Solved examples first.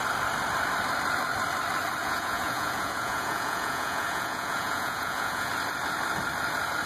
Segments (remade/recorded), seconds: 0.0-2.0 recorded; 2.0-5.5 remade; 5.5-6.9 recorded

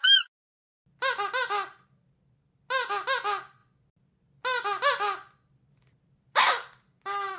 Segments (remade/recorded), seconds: 0.0-7.4 recorded